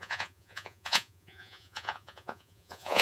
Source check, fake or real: fake